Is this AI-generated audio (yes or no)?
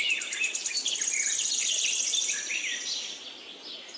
no